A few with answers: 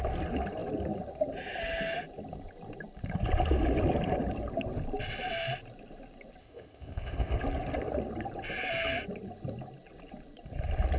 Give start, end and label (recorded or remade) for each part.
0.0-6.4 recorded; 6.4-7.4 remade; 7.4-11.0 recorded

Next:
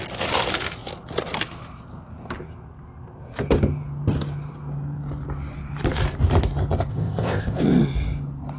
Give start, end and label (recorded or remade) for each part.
0.0-6.9 recorded; 6.9-7.6 remade; 7.6-8.6 recorded

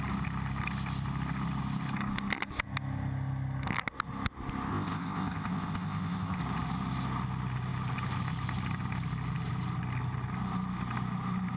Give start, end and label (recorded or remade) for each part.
0.0-4.7 recorded; 4.7-6.4 remade; 6.4-11.6 recorded